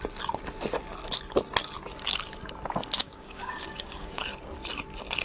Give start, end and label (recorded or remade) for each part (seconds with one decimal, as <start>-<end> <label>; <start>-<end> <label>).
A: 0.0-3.0 recorded; 3.0-4.2 remade; 4.2-5.2 recorded